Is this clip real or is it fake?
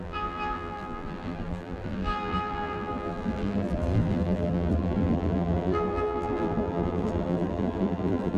fake